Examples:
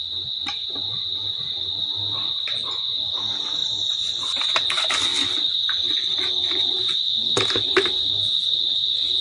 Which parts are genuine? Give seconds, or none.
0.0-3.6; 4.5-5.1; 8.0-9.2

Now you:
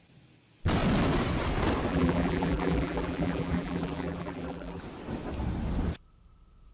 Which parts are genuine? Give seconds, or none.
0.0-1.9; 4.8-6.7

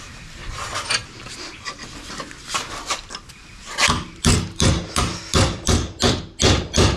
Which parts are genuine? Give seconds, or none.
0.4-2.7